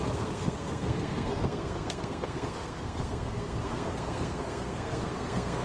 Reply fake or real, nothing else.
fake